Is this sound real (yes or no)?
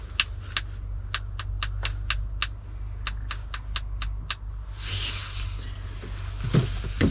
yes